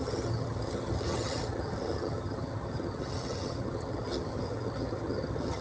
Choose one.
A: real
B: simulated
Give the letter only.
B